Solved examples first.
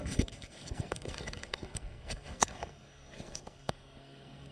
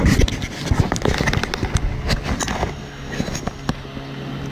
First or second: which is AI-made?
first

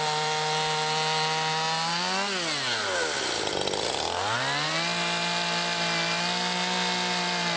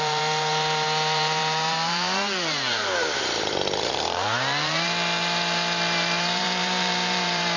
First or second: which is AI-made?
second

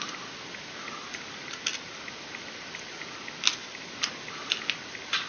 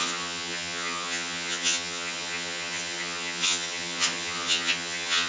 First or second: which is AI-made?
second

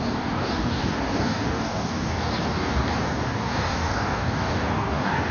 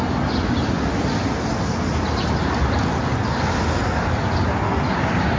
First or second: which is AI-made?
first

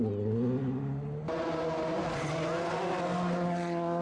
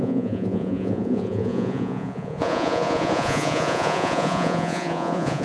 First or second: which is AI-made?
second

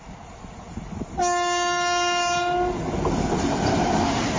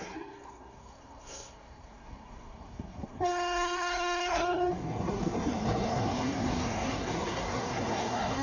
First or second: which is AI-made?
second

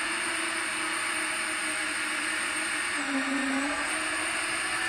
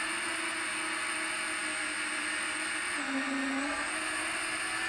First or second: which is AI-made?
first